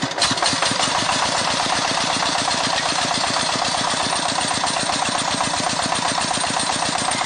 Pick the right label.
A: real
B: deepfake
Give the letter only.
B